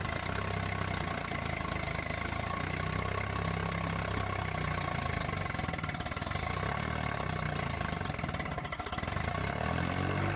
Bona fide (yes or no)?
yes